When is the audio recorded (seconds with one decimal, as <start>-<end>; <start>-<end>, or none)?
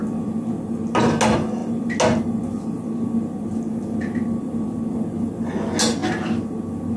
0.0-7.0